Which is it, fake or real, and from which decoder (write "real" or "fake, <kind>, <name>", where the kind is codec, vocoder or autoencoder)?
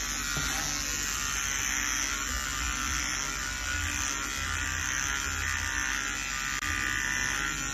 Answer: real